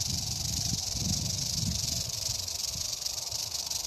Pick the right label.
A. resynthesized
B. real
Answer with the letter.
B